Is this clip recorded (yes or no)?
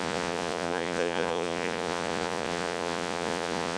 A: no